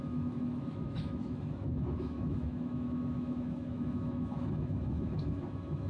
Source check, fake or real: fake